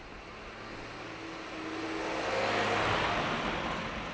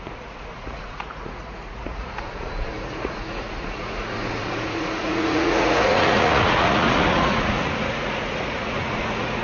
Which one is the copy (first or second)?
second